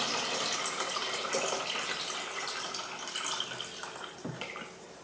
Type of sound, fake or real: real